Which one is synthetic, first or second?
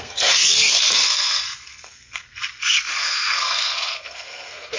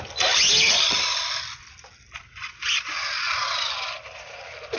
first